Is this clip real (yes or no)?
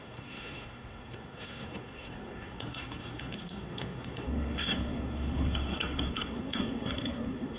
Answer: no